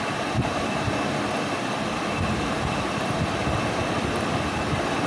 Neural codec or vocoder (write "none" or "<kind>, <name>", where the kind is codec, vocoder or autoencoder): none